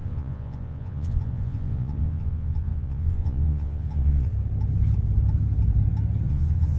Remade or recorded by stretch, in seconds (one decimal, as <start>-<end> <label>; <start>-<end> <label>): 0.0-4.3 remade; 4.3-6.3 recorded; 6.3-6.8 remade